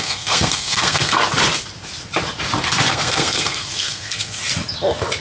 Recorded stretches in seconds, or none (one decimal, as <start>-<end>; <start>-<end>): 1.2-2.9; 4.4-5.2